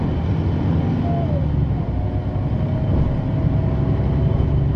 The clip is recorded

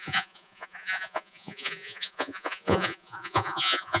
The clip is remade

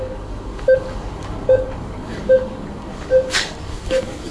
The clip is remade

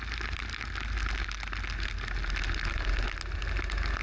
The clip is recorded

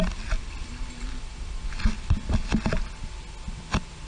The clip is recorded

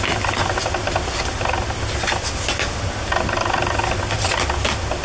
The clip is recorded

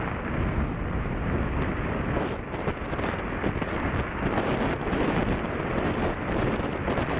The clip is recorded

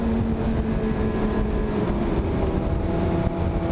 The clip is recorded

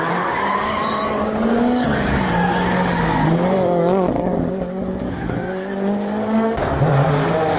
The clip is remade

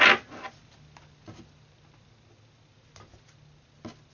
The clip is recorded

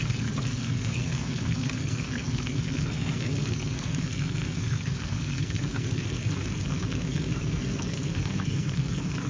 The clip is remade